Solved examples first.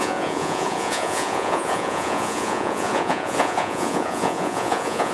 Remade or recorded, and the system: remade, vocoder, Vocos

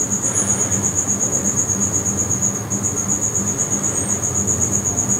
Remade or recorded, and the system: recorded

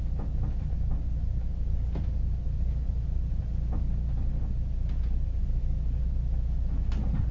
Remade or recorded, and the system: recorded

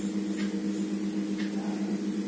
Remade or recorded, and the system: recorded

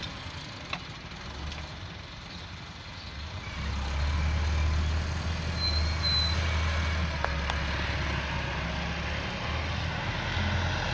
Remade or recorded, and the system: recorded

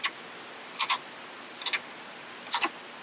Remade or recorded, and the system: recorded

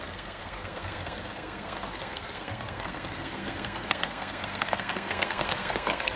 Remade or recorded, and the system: remade, codec, SNAC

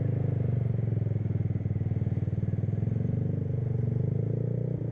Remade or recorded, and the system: recorded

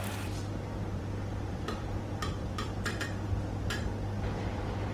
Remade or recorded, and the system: remade, vocoder, BigVGAN v2